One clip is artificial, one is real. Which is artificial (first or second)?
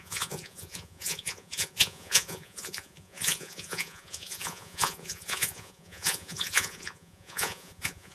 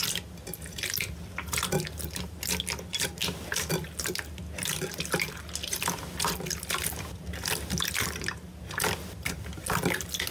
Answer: first